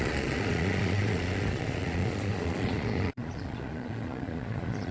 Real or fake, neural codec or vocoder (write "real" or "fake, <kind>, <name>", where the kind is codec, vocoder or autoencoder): fake, vocoder, Vocos